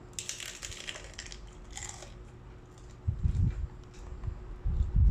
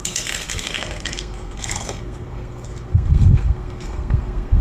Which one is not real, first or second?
second